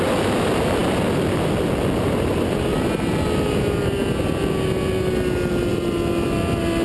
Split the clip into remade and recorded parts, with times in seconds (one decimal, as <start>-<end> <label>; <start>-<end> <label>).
0.0-6.8 recorded